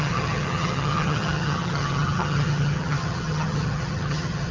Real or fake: fake